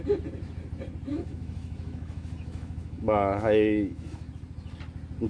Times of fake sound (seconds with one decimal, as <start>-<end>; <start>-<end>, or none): 1.1-4.3